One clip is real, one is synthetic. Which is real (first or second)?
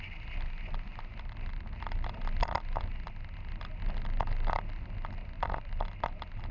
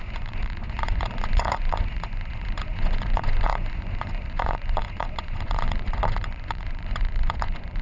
first